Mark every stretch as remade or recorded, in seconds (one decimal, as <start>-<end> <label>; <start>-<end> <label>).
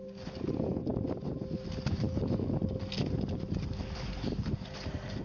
0.0-5.2 recorded